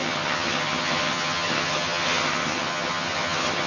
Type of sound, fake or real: fake